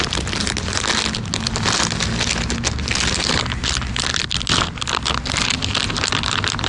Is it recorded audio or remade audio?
recorded